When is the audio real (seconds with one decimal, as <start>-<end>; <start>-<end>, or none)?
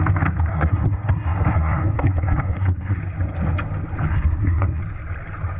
0.0-0.5; 3.0-4.1; 4.8-5.6